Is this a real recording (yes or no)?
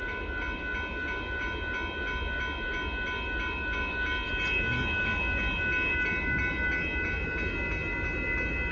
yes